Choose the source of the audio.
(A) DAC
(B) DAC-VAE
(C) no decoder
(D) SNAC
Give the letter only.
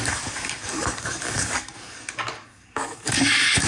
A